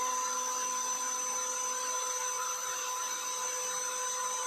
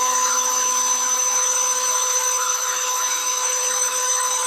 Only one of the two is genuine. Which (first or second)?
first